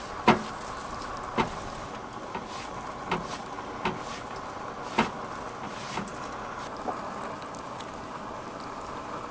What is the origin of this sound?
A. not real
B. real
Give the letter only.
B